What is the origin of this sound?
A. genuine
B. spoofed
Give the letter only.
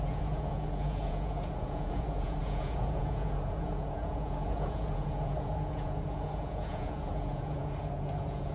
B